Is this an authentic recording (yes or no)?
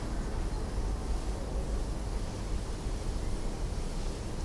yes